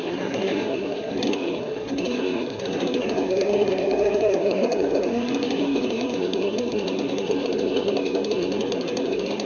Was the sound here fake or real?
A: fake